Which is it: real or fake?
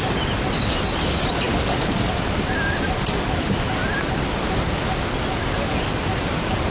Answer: real